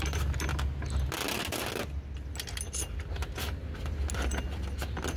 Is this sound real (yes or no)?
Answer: yes